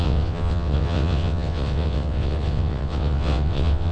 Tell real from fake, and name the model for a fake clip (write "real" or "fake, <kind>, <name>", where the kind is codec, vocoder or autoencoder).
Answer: fake, vocoder, WaveNeXt